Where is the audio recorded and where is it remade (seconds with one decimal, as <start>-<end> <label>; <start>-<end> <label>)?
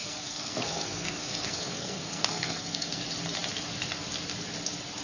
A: 0.0-3.0 remade; 3.0-5.0 recorded